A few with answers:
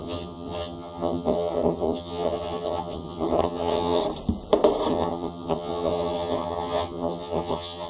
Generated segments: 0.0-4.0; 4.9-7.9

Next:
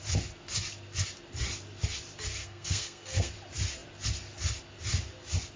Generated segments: 2.4-3.3

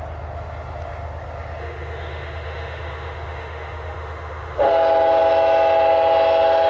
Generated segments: 1.6-4.7

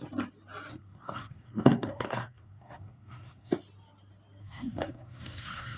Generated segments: 0.7-3.5; 4.4-5.8

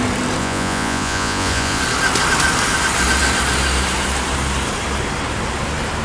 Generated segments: 0.4-1.8

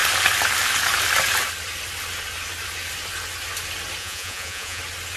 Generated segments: 4.0-4.8